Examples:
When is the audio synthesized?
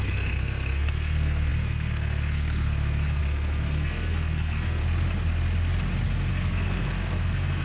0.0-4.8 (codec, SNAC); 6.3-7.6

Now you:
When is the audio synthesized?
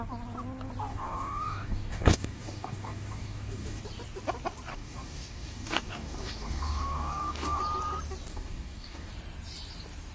0.9-3.8 (codec, DAC); 4.7-7.6; 8.3-9.1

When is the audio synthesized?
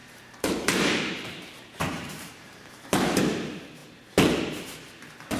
0.0-3.2 (vocoder, BigVGAN v2)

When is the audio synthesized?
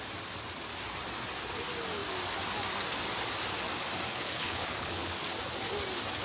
4.1-5.1 (codec, HILCodec)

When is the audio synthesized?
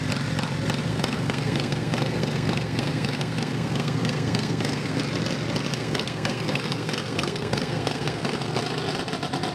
0.9-5.0 (codec, SNAC); 5.7-8.6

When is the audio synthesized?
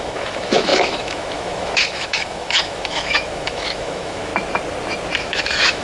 0.0-4.3 (autoencoder, DAC-VAE); 5.2-5.8